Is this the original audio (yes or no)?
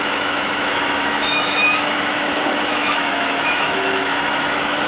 no